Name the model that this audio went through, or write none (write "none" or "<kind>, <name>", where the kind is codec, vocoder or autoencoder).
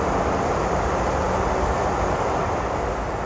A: none